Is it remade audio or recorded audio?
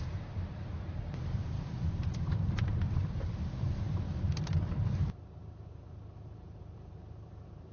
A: remade